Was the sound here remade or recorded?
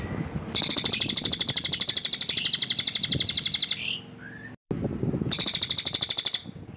recorded